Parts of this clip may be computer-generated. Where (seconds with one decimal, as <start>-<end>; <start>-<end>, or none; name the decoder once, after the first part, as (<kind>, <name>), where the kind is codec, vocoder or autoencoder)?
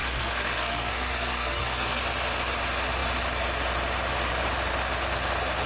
0.0-2.0 (codec, SNAC)